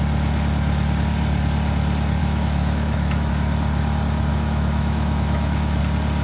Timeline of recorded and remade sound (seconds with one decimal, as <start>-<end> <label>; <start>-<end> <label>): 0.0-2.2 recorded; 2.2-3.3 remade; 3.3-4.3 recorded; 4.3-5.8 remade; 5.8-6.2 recorded